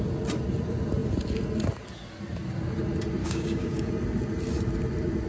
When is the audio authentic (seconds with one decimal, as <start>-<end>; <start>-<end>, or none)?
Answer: 0.0-3.2; 3.9-5.3